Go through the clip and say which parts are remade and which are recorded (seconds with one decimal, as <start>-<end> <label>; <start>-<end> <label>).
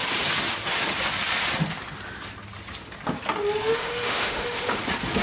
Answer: 0.0-3.6 recorded; 3.6-4.8 remade; 4.8-5.2 recorded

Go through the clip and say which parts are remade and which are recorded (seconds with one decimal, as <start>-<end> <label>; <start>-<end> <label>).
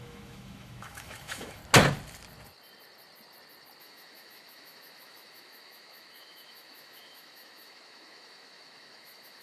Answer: 0.0-1.6 remade; 1.6-3.8 recorded; 3.8-9.4 remade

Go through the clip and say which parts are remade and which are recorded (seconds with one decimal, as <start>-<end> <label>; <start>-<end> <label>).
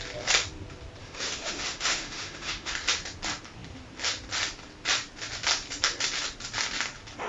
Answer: 0.0-1.0 recorded; 1.0-2.7 remade; 2.7-7.3 recorded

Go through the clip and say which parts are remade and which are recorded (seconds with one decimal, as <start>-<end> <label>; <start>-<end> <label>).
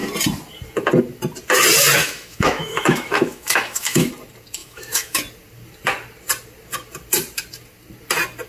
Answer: 0.0-2.0 recorded; 2.0-4.1 remade; 4.1-4.6 recorded; 4.6-5.2 remade; 5.2-8.5 recorded